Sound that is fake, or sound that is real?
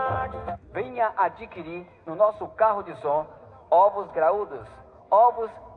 fake